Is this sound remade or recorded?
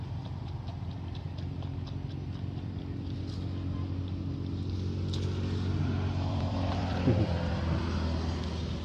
remade